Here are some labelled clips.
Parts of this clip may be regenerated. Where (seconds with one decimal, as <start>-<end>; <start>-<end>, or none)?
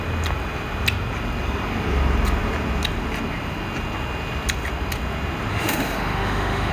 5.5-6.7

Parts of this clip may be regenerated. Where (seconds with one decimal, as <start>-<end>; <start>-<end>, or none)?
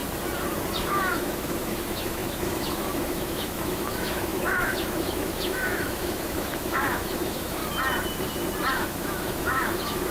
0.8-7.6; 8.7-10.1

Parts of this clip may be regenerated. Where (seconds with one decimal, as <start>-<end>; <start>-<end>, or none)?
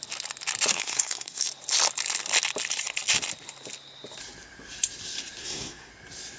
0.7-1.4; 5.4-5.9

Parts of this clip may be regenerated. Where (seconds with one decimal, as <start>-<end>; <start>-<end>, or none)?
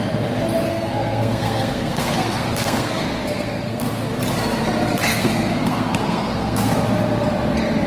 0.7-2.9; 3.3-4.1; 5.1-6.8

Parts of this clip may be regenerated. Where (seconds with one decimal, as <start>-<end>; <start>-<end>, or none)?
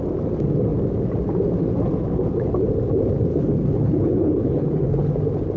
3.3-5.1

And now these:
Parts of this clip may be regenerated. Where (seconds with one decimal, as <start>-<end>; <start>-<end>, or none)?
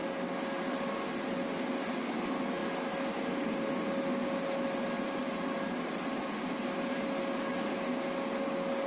none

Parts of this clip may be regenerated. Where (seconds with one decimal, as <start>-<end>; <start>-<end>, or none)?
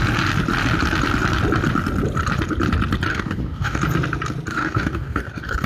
3.1-3.8; 4.5-5.7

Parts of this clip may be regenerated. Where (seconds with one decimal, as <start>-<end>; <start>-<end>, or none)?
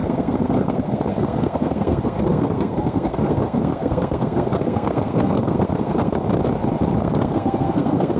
0.0-6.3; 7.0-8.2